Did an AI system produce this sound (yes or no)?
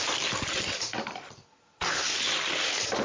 no